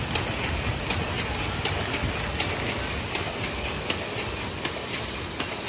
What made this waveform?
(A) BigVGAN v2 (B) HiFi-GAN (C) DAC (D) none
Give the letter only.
D